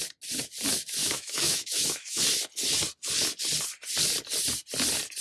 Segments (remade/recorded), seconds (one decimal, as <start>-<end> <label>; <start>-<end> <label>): 0.0-1.0 recorded; 1.0-2.2 remade; 2.2-5.2 recorded